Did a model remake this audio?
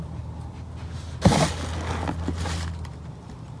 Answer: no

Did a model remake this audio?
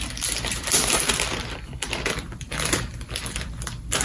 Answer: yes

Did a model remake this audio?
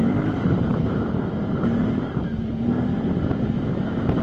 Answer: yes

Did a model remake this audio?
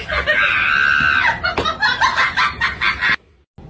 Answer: no